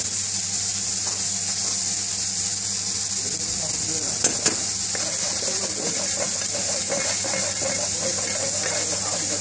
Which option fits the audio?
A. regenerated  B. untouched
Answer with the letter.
B